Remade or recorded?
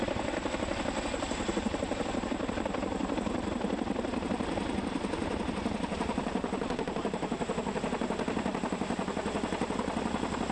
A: recorded